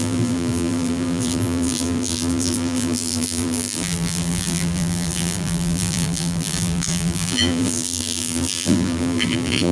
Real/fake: fake